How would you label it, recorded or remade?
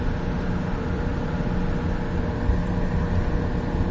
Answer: recorded